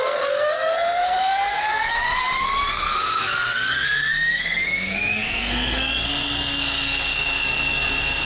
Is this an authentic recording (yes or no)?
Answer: no